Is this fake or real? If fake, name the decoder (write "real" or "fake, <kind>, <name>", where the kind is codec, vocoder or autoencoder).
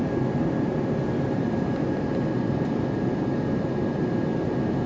real